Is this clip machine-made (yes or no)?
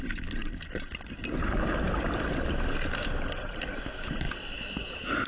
no